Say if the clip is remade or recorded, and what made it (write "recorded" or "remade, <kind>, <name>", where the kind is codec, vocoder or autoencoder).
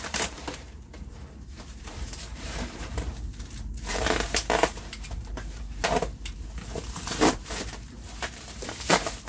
remade, vocoder, BigVGAN v2